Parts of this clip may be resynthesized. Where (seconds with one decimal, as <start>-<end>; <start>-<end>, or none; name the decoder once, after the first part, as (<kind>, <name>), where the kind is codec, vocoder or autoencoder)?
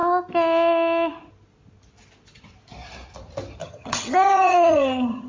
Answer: 3.6-5.3 (vocoder, HiFi-GAN)